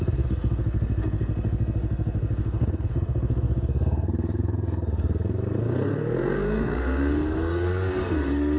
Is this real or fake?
fake